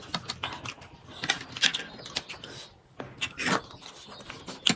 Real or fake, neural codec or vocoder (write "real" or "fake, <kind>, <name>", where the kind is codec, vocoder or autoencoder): real